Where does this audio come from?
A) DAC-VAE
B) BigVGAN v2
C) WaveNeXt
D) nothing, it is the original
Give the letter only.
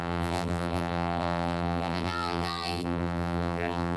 B